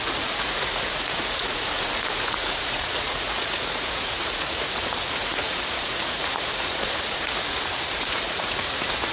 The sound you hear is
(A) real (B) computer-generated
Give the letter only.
B